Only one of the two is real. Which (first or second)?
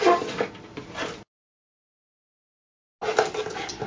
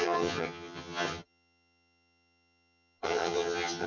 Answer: first